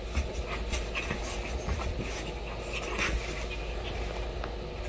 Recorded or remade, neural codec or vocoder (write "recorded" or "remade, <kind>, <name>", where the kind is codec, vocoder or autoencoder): recorded